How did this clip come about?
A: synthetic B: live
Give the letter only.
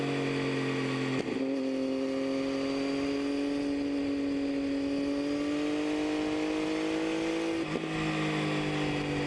B